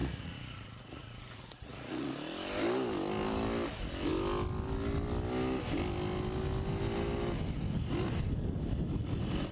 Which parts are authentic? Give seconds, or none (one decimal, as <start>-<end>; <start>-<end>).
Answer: 2.1-9.5